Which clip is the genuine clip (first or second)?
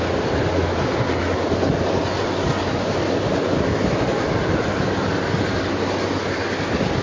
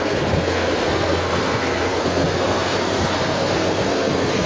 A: first